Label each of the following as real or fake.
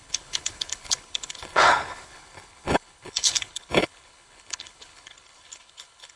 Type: fake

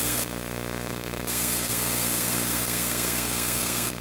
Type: fake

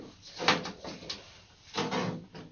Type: real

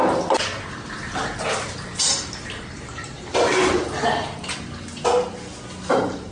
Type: real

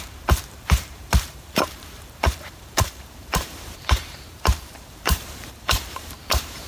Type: fake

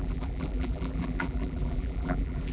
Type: fake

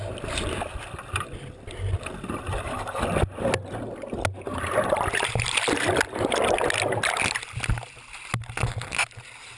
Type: real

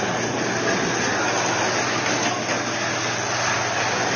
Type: real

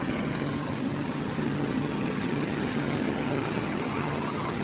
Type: fake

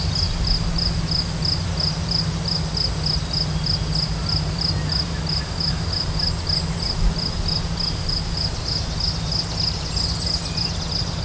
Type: real